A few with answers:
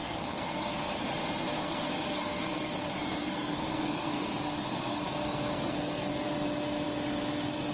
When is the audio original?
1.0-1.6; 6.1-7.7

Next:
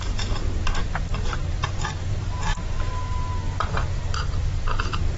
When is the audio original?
2.5-4.7